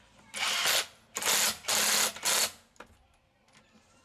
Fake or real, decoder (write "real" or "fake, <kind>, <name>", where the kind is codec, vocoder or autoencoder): real